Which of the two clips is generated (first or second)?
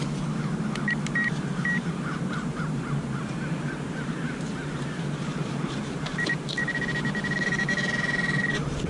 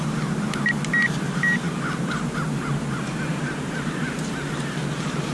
first